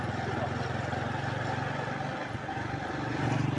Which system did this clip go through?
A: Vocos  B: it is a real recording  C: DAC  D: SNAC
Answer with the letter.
B